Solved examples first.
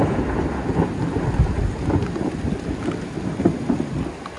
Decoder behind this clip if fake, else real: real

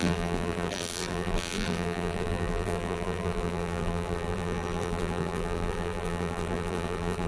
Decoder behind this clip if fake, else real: fake, vocoder, BigVGAN v2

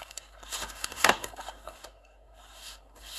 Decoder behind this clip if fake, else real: fake, codec, SNAC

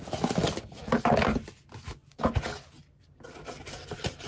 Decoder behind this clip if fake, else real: real